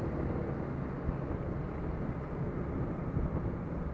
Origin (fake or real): real